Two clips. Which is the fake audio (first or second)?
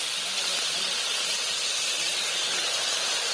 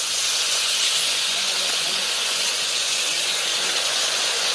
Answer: second